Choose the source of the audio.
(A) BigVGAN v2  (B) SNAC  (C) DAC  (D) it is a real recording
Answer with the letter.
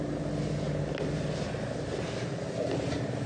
D